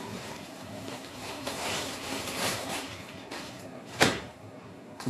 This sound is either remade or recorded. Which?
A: remade